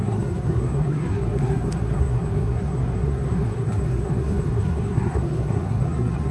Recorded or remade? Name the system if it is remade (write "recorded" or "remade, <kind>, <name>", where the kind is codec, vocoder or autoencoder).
remade, codec, SNAC